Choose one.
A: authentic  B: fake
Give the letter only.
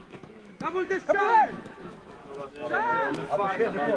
B